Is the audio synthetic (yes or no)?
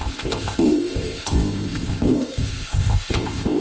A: yes